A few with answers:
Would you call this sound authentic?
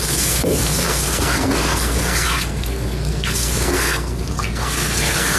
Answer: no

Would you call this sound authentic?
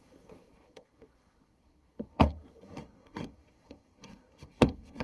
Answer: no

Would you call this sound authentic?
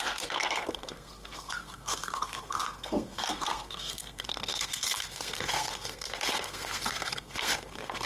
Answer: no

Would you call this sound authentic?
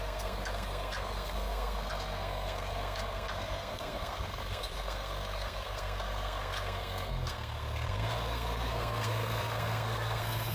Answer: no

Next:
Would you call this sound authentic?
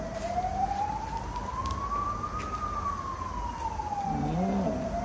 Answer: yes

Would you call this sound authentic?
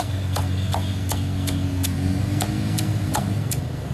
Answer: no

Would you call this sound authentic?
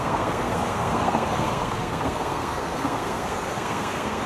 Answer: no